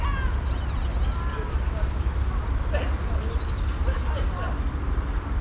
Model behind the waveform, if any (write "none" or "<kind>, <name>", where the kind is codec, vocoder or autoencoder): none